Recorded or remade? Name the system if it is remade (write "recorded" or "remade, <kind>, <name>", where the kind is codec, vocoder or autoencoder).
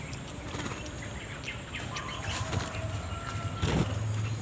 recorded